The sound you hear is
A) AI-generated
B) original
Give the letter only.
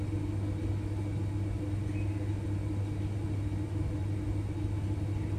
B